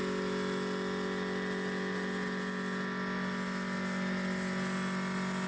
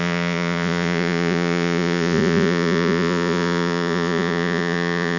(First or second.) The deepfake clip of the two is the second